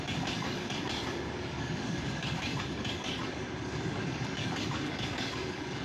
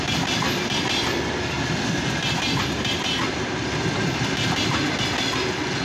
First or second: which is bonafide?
second